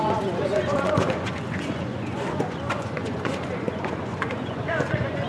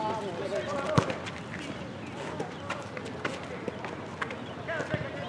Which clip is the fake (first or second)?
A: first